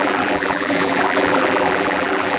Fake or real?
fake